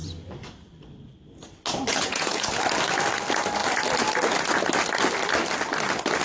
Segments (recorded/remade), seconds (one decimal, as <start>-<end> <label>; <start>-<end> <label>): 0.0-1.9 recorded; 1.9-2.5 remade; 2.5-6.2 recorded